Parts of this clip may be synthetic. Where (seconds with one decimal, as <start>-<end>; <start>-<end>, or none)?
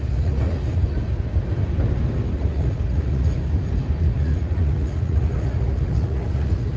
0.0-0.8; 2.3-3.3; 4.0-6.8